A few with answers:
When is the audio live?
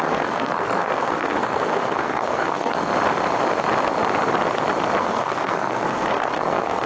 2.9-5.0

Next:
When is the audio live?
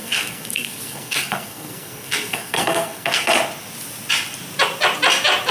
3.3-5.5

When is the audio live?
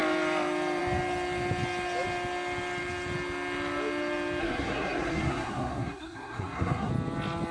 0.0-4.4; 6.9-7.5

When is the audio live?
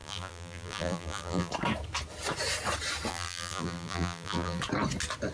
1.5-3.1; 4.6-5.3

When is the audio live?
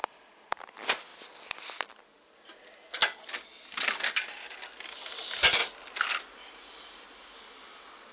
0.0-8.1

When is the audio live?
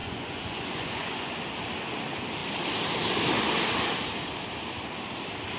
1.3-5.6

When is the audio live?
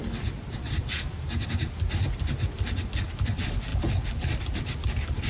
0.0-5.3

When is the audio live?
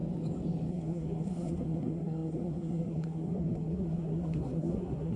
0.0-0.7